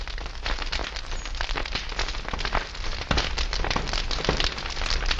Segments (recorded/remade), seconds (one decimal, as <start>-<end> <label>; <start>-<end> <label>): 0.0-5.2 recorded